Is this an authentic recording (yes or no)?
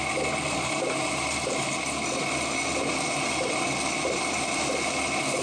yes